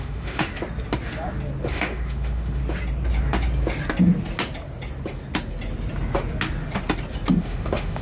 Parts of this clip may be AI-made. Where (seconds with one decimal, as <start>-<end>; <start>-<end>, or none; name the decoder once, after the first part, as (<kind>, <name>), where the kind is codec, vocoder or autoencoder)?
0.0-0.5 (autoencoder, DAC-VAE); 1.7-2.6; 7.4-8.0